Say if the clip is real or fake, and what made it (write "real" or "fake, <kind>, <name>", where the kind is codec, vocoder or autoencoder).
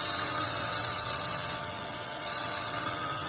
fake, vocoder, WaveNeXt